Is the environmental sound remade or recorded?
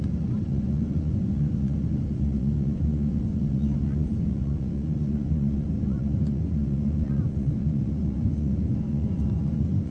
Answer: remade